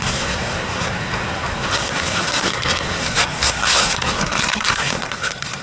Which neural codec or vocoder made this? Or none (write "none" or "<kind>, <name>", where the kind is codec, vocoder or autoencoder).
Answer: codec, SNAC